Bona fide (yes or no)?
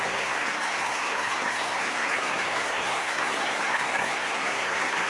no